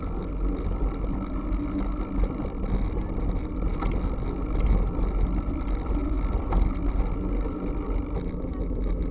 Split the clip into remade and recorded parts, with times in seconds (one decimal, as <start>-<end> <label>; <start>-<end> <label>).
0.0-9.1 recorded